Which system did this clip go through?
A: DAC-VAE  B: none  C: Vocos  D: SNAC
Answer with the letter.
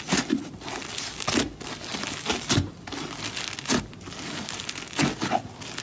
B